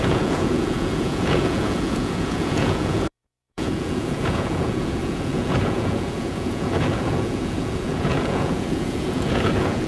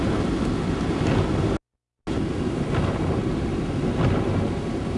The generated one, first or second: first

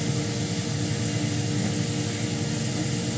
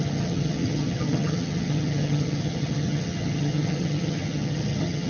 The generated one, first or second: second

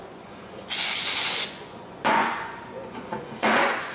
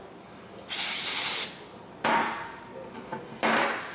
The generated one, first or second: first